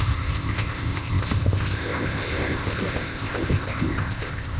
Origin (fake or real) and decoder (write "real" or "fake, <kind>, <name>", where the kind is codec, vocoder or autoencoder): fake, codec, ZipCodec